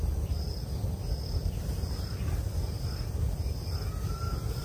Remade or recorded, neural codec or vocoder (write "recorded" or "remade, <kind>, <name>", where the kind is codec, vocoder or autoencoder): recorded